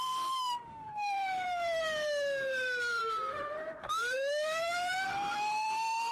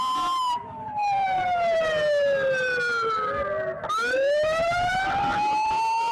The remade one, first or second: first